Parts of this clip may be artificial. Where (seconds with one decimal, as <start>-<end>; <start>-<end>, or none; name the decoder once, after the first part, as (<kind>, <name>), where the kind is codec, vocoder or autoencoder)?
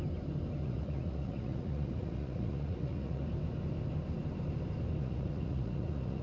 0.6-3.3 (vocoder, Vocos); 5.0-6.2